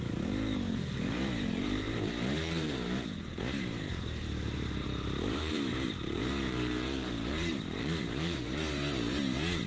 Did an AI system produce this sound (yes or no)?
yes